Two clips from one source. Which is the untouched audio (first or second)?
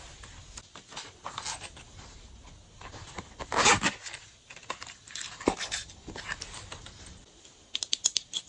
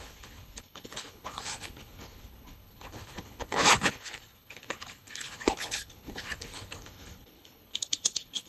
first